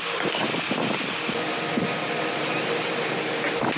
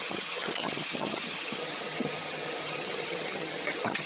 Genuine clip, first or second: first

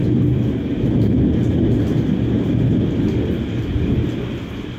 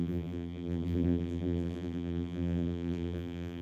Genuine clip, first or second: first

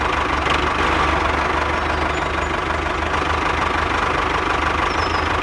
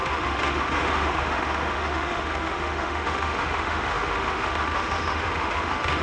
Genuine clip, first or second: first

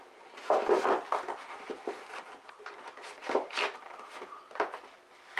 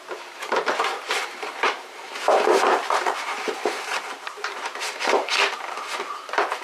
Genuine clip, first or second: first